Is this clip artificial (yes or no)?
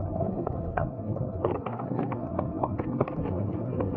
yes